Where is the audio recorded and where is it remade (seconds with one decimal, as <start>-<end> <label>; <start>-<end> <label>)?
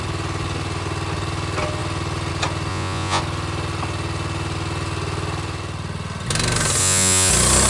0.0-2.7 recorded; 2.7-3.2 remade; 3.2-6.8 recorded; 6.8-7.3 remade; 7.3-7.7 recorded